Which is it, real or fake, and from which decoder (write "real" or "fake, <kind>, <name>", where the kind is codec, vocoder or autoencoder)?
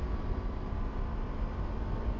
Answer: real